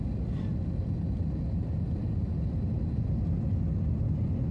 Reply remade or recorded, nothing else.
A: recorded